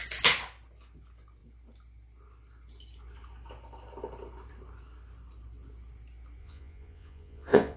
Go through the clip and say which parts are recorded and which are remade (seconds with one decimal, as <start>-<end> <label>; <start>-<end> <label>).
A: 0.0-6.4 recorded; 6.4-7.8 remade